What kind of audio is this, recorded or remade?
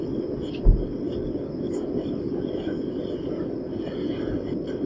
recorded